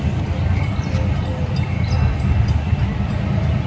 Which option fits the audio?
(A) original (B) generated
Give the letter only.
A